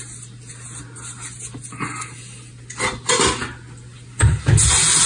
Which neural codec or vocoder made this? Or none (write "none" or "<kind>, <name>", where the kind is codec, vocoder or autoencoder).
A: none